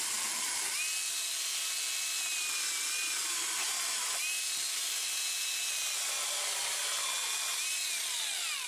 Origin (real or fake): real